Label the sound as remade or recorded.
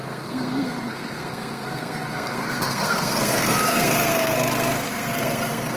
remade